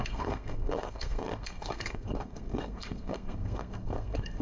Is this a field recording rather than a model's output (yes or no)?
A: no